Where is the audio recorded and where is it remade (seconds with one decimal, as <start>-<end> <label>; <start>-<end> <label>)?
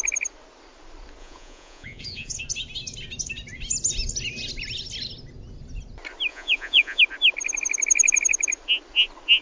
0.0-1.2 recorded; 1.2-2.4 remade; 2.4-6.3 recorded; 6.3-7.0 remade; 7.0-9.4 recorded